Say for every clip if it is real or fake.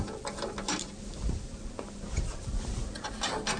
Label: real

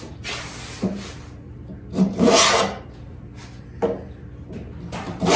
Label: real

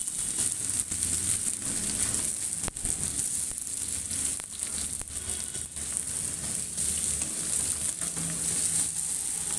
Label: real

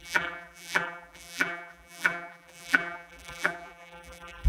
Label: fake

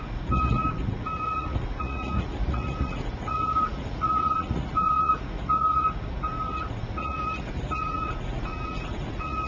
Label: fake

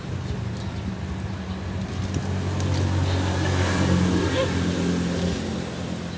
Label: real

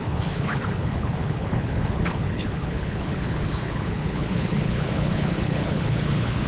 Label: fake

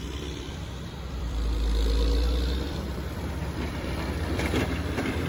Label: fake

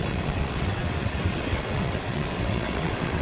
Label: fake